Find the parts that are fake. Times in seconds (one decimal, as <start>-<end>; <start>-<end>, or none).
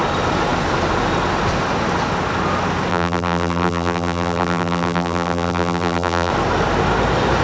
2.9-6.3